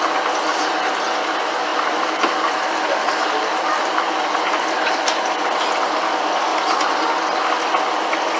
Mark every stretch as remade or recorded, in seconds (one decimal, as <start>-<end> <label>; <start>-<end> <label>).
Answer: 0.0-0.5 recorded; 0.5-1.0 remade; 1.0-1.7 recorded; 1.7-4.7 remade; 4.7-8.4 recorded